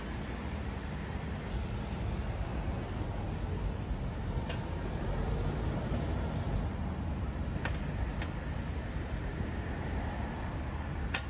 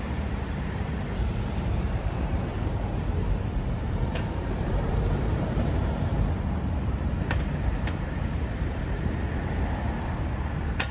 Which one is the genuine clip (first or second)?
first